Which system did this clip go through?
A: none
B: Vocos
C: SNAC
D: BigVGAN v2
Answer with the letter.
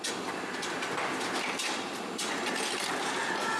A